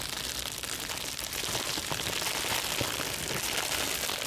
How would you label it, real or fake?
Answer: real